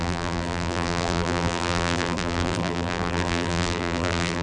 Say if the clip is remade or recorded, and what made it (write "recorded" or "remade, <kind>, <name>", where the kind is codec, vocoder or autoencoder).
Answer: remade, vocoder, BigVGAN v2